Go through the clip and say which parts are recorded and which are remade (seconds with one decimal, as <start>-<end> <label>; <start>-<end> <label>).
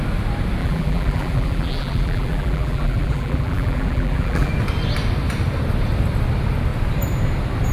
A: 0.0-0.6 recorded; 0.6-4.5 remade; 4.5-7.7 recorded